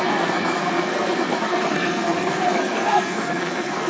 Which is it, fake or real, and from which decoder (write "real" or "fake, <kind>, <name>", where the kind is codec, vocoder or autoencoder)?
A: fake, codec, SNAC